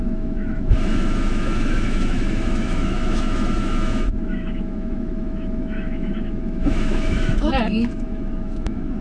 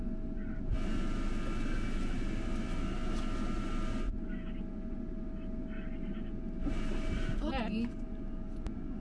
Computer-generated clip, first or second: first